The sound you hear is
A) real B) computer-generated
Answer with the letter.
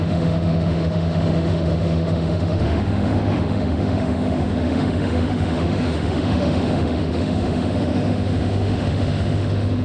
B